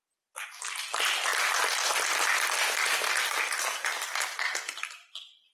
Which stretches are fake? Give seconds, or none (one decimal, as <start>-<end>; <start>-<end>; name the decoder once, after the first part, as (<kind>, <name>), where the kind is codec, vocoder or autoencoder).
none